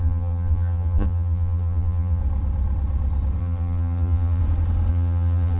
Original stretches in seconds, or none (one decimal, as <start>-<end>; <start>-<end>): 2.2-3.4; 4.4-4.9